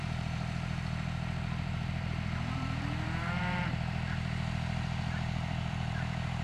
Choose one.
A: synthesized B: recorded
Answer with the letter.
A